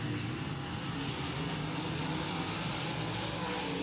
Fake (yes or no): no